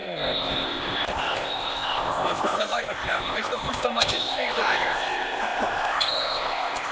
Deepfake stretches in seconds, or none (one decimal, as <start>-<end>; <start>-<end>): 0.0-6.9